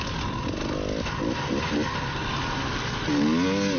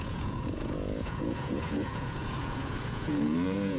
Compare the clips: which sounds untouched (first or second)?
first